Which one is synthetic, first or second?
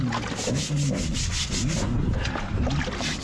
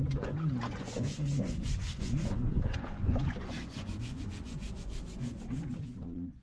second